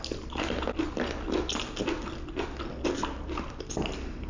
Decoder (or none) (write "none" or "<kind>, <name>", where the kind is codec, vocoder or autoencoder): none